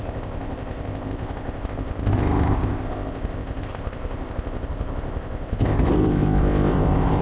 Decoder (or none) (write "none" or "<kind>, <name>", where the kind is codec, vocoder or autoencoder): codec, ZipCodec